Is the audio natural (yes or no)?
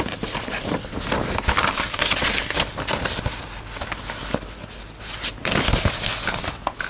yes